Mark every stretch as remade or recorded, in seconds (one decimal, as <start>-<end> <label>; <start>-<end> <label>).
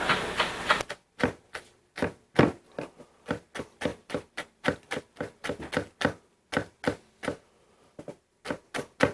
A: 0.0-3.9 recorded; 3.9-5.0 remade; 5.0-9.1 recorded